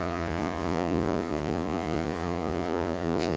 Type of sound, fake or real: fake